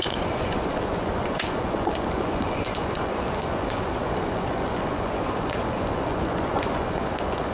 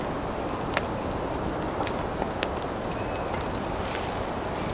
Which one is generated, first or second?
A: first